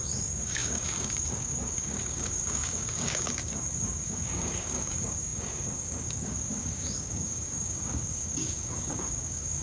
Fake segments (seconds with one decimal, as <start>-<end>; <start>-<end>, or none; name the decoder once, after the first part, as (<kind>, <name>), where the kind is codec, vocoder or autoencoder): 0.0-9.6 (codec, DAC)

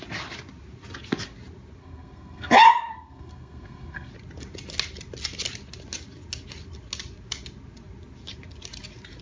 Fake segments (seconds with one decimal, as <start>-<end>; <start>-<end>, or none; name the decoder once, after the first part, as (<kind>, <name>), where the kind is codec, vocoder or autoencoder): 1.8-4.1 (codec, SNAC)

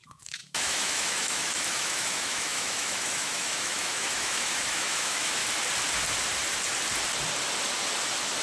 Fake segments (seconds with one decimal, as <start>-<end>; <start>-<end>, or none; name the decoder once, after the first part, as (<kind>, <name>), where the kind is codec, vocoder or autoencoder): 0.0-5.4 (autoencoder, DAC-VAE)

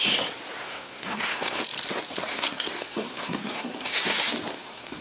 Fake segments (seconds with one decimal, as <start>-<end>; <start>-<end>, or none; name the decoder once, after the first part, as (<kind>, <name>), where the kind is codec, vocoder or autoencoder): 0.6-1.6 (codec, SNAC); 2.3-4.0; 4.5-5.0

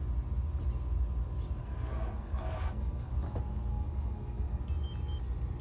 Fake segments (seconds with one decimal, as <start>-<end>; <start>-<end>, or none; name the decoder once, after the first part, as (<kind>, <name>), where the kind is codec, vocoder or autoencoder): 1.6-3.1 (codec, SNAC); 3.7-4.6